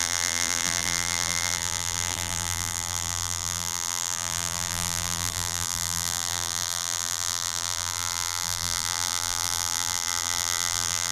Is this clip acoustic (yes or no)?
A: no